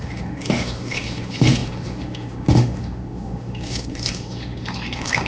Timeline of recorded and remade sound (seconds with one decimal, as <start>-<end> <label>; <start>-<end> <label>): 0.0-5.3 remade